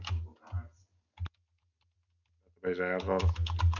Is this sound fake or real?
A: real